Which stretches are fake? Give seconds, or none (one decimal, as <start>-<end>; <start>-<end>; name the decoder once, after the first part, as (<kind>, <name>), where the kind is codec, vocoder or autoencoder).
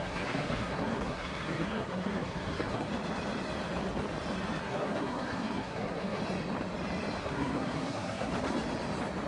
0.0-2.9 (codec, SNAC); 4.6-6.2; 7.2-8.3